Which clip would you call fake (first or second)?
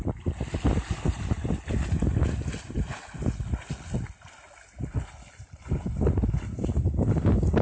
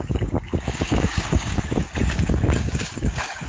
second